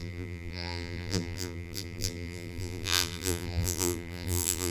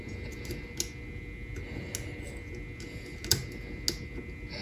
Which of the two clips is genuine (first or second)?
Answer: second